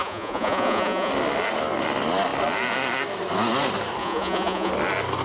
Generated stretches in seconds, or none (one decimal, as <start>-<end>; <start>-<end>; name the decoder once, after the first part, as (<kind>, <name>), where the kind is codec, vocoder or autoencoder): 0.0-1.1 (vocoder, Vocos); 4.0-4.7